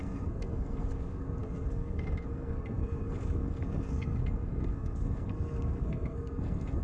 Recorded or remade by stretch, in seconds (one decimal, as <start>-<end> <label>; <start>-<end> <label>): 0.0-6.8 remade

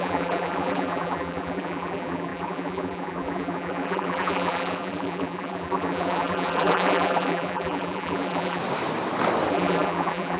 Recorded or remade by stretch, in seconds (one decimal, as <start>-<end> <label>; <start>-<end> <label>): 0.0-8.6 remade; 8.6-9.5 recorded; 9.5-10.4 remade

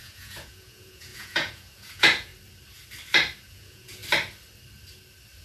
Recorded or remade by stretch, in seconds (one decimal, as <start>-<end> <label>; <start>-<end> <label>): 0.0-2.3 remade; 2.3-3.5 recorded; 3.5-4.0 remade; 4.0-5.4 recorded

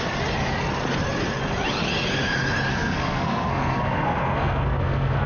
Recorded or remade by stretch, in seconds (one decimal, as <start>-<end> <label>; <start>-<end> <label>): 0.0-2.7 recorded; 2.7-5.3 remade

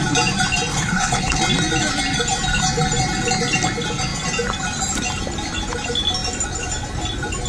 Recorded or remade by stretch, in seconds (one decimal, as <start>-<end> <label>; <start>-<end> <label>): 0.0-0.7 recorded; 0.7-1.4 remade; 1.4-7.5 recorded

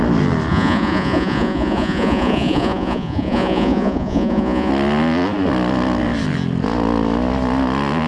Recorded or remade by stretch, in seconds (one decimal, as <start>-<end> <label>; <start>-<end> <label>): 0.0-0.5 recorded; 0.5-4.7 remade; 4.7-8.1 recorded

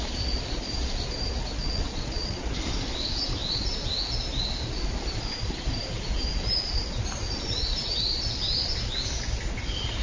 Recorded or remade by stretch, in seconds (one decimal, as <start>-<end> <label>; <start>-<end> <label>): 0.0-1.6 recorded; 1.6-2.4 remade; 2.4-10.0 recorded